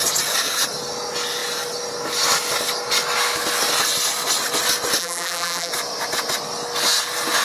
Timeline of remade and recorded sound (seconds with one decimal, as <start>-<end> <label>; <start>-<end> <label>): 0.0-5.0 recorded; 5.0-5.7 remade; 5.7-7.4 recorded